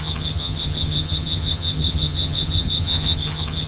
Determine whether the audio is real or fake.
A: fake